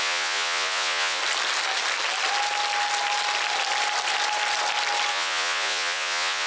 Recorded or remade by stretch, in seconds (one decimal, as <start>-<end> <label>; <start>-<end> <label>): 0.0-1.2 remade; 1.2-5.1 recorded; 5.1-6.5 remade